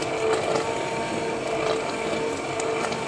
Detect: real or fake real